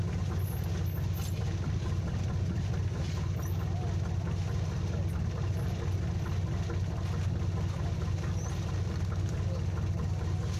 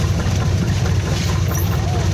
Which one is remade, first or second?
second